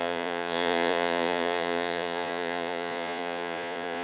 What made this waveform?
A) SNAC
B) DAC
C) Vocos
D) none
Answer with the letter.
C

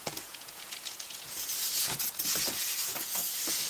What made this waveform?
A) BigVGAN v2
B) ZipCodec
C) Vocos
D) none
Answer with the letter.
C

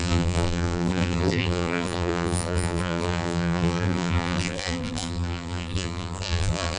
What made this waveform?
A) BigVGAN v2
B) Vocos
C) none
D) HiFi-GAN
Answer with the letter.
A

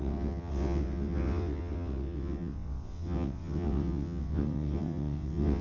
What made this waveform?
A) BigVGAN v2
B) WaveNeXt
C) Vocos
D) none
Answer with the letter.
B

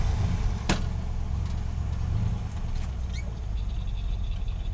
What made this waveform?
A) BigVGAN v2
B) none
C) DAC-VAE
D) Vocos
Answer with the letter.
B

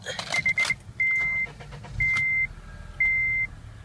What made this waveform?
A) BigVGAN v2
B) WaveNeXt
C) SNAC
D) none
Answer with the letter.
D